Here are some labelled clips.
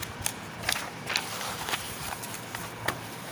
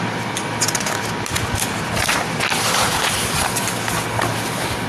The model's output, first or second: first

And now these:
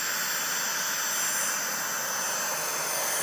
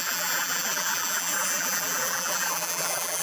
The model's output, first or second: second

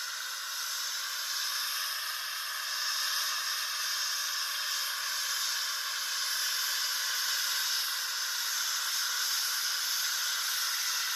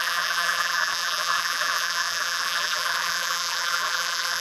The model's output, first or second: second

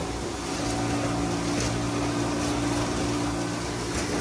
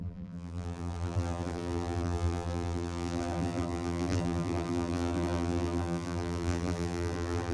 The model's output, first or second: second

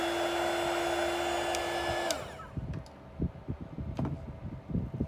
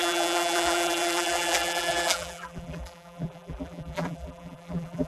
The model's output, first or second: second